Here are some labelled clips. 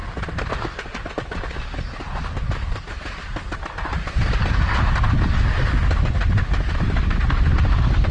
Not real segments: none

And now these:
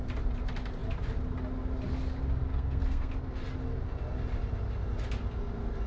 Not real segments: 2.5-3.1 (codec, SNAC)

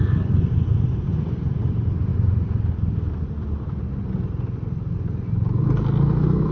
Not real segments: none

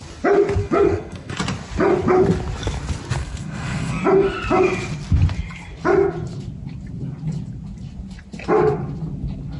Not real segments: 0.6-1.4 (codec, SNAC); 3.2-4.0

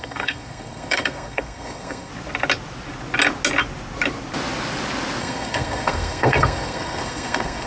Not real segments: 0.0-2.1 (codec, SNAC); 5.2-7.7